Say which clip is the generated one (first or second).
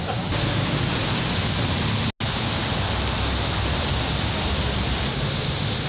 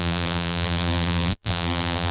second